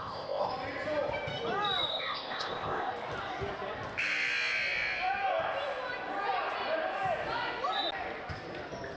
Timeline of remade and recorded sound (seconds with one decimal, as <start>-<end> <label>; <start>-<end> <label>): 0.0-0.5 remade; 0.5-1.9 recorded; 1.9-2.9 remade; 2.9-9.0 recorded